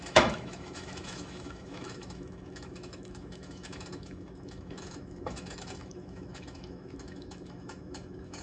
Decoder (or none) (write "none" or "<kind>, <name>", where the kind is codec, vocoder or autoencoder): autoencoder, DAC-VAE